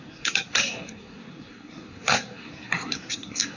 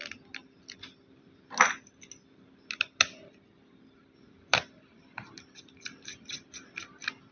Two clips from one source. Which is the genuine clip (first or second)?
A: second